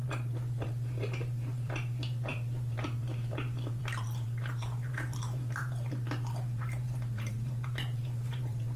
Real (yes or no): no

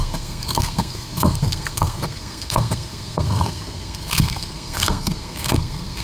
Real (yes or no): no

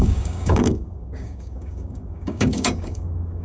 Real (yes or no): no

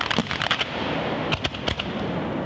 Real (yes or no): yes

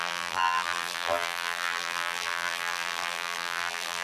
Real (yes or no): no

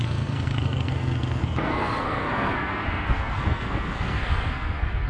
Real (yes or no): no